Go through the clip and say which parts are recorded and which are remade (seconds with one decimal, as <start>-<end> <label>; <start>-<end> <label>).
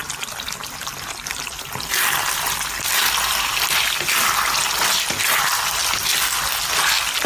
0.0-3.3 remade; 3.3-7.3 recorded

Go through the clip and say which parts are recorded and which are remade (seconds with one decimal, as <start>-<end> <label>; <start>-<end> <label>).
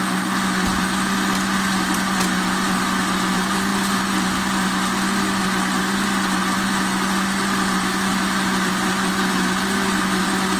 0.0-10.6 recorded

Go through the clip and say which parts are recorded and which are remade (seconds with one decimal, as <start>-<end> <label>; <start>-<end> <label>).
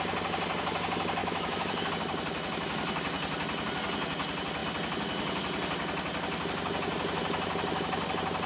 0.0-1.2 recorded; 1.2-1.9 remade; 1.9-8.5 recorded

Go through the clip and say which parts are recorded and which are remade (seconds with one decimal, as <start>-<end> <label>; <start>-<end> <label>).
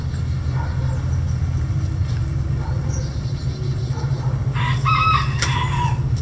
0.0-6.2 recorded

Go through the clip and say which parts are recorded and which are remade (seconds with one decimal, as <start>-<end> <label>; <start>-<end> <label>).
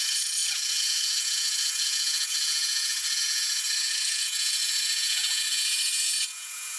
0.0-6.8 remade